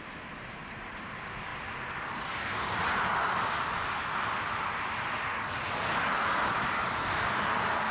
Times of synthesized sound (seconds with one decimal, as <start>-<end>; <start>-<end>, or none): none